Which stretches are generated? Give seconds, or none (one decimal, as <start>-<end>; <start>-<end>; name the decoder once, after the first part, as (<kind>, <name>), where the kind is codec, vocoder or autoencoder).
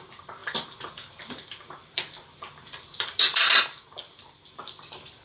0.0-5.2 (vocoder, BigVGAN v2)